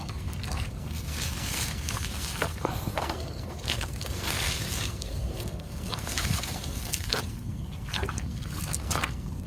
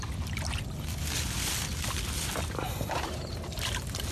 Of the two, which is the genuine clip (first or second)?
second